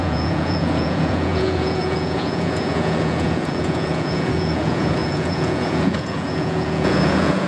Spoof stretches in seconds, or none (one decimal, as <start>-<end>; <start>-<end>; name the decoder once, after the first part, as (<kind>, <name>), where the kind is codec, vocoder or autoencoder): 0.0-7.5 (vocoder, Vocos)